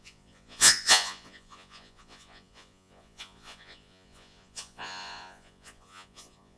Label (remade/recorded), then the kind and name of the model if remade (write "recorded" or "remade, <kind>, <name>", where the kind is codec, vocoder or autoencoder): remade, vocoder, Vocos